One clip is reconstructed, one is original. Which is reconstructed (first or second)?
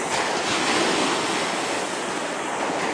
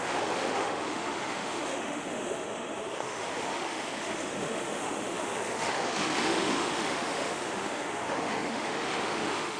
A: second